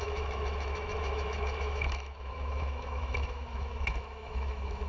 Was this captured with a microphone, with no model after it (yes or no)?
no